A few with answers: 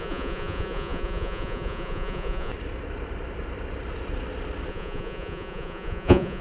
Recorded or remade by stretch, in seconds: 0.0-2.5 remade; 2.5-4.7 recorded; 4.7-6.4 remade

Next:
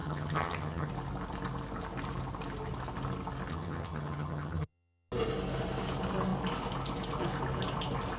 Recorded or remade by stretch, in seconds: 0.0-0.9 remade; 0.9-3.5 recorded; 3.5-5.1 remade; 5.1-8.2 recorded

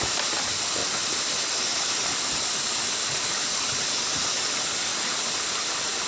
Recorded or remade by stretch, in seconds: 0.0-0.8 recorded; 0.8-4.5 remade; 4.5-6.1 recorded

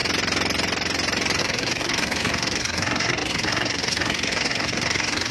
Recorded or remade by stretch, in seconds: 0.0-1.4 recorded; 1.4-5.3 remade